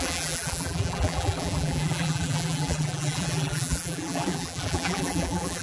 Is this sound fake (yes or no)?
yes